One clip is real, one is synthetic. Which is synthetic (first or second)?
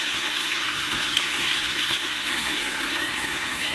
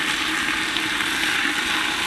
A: first